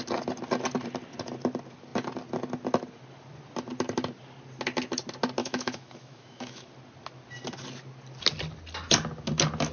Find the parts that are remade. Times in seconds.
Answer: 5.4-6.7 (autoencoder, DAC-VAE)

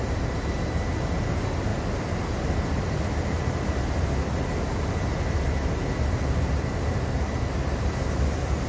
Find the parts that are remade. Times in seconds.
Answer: none

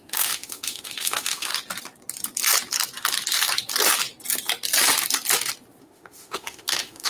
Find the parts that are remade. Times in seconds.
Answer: 0.0-1.5 (autoencoder, DAC-VAE); 5.8-7.1

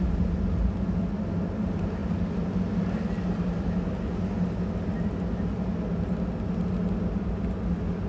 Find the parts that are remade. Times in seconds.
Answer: none